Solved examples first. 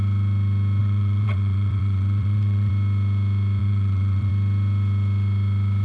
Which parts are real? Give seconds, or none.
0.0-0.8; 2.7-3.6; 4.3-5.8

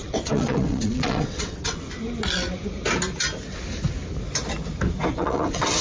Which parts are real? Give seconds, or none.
1.9-5.1

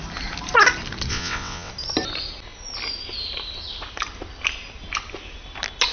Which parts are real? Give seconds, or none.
0.0-1.1; 1.7-5.9